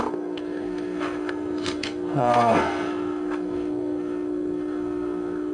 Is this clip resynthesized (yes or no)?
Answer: yes